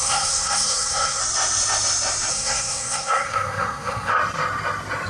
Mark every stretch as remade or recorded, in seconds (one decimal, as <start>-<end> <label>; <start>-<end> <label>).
0.0-1.2 remade; 1.2-2.3 recorded; 2.3-4.1 remade; 4.1-5.1 recorded

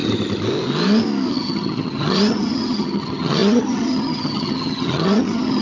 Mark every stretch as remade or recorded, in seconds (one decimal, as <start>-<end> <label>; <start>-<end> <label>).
0.0-1.3 recorded; 1.3-5.6 remade

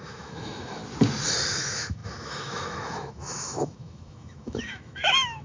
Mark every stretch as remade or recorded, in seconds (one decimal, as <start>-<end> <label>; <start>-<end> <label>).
0.0-0.8 remade; 0.8-1.5 recorded; 1.5-5.4 remade

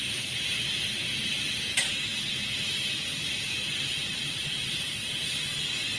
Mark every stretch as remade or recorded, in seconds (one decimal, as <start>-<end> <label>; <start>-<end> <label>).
0.0-6.0 recorded

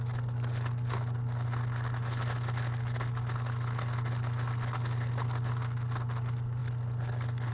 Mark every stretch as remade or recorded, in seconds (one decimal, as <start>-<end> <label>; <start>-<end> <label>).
0.0-7.5 recorded

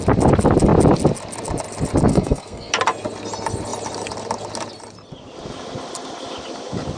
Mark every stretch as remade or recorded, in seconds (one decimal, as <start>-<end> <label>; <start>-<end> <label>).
0.0-2.1 recorded; 2.1-2.7 remade; 2.7-7.0 recorded

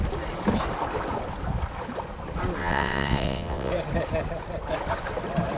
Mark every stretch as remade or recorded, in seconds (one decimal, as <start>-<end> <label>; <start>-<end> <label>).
0.0-2.6 recorded; 2.6-3.7 remade; 3.7-5.6 recorded

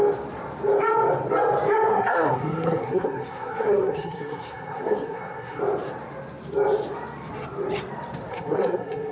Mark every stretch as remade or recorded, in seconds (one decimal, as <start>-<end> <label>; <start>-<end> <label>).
0.0-1.9 recorded; 1.9-5.6 remade; 5.6-8.3 recorded; 8.3-9.1 remade